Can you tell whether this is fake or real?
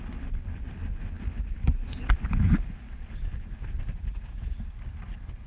real